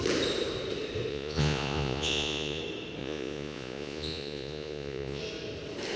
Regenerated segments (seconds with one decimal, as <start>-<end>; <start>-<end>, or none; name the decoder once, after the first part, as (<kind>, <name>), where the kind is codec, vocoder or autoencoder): 1.1-2.6 (vocoder, Vocos); 3.0-5.2